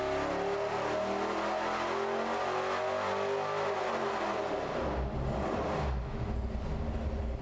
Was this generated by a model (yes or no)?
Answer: no